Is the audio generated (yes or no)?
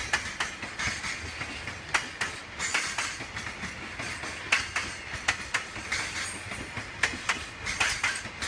no